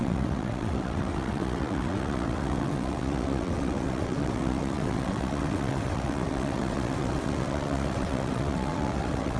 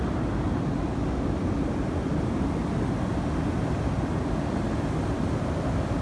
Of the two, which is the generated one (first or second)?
first